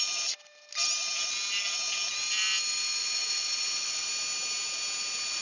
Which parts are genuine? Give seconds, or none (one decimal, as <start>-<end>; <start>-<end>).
0.0-3.0; 4.1-5.4